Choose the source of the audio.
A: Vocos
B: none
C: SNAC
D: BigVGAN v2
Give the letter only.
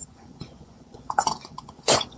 A